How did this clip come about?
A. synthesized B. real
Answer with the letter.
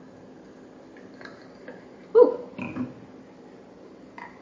B